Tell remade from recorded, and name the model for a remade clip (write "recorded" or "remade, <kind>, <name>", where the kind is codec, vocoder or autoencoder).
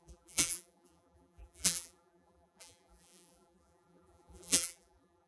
remade, vocoder, BigVGAN v2